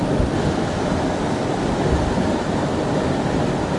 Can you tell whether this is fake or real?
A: real